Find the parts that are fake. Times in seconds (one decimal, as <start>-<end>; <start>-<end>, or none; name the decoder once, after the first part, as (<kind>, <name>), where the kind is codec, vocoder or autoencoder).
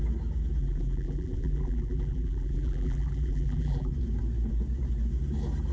0.6-3.9 (vocoder, BigVGAN v2)